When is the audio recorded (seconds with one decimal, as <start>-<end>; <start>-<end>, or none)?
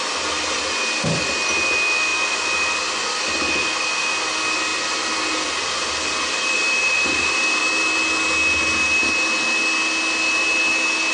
0.0-4.7; 7.6-11.1